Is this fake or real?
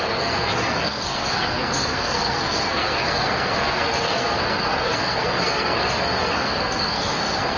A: fake